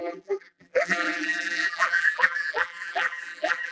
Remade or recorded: remade